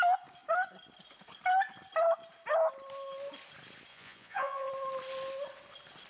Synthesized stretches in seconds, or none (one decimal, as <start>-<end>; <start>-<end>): 3.9-4.7